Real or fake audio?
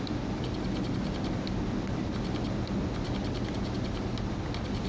real